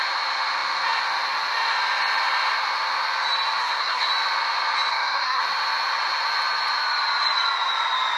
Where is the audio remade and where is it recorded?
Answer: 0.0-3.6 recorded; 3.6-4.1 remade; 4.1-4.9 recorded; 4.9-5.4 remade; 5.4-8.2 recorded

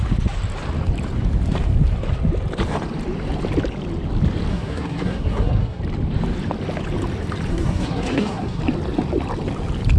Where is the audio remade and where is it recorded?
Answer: 0.0-4.5 recorded; 4.5-5.8 remade; 5.8-7.5 recorded; 7.5-8.6 remade; 8.6-10.0 recorded

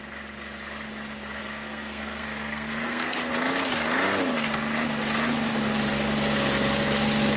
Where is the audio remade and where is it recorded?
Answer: 0.0-1.4 recorded; 1.4-3.3 remade; 3.3-7.4 recorded

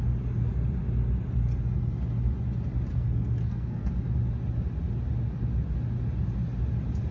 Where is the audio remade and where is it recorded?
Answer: 0.0-2.9 recorded; 2.9-3.9 remade; 3.9-7.1 recorded

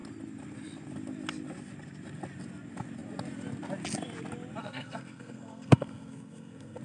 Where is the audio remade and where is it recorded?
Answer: 0.0-4.6 recorded; 4.6-6.8 remade

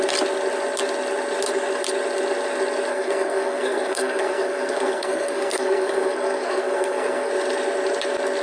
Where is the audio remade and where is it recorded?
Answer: 0.0-2.9 recorded; 2.9-7.3 remade; 7.3-8.4 recorded

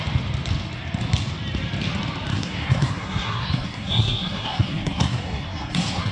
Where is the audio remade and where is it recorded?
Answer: 0.0-2.3 recorded; 2.3-6.1 remade